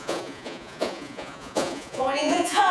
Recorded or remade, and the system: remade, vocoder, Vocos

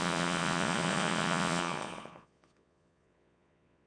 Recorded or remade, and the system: remade, vocoder, Vocos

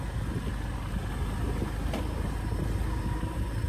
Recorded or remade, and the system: recorded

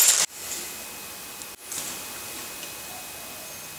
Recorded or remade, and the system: recorded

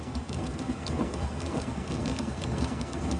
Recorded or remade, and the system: remade, codec, SNAC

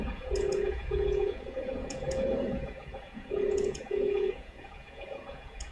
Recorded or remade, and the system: remade, vocoder, Vocos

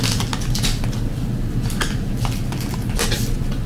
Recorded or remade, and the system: recorded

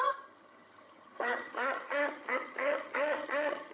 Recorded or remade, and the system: remade, vocoder, HiFi-GAN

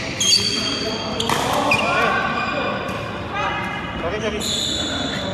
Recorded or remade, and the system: recorded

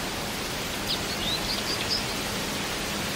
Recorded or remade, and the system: recorded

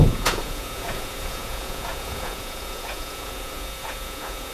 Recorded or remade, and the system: remade, vocoder, Vocos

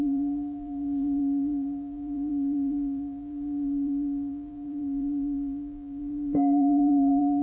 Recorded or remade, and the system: remade, vocoder, BigVGAN v2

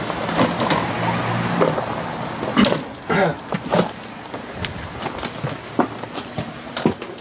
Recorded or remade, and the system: recorded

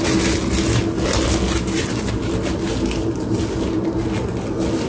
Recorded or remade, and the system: recorded